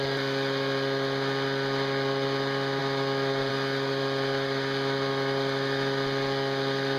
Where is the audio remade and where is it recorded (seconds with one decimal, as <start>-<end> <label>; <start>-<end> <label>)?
0.0-7.0 recorded